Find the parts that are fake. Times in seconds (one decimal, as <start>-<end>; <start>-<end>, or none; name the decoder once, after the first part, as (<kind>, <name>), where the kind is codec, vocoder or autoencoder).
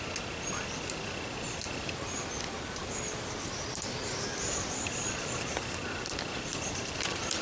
2.8-7.4 (vocoder, BigVGAN v2)